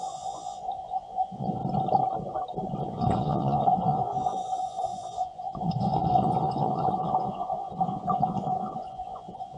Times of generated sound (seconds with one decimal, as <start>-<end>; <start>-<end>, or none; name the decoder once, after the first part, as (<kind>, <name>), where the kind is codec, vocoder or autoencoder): 0.0-1.6 (vocoder, Vocos); 2.8-9.6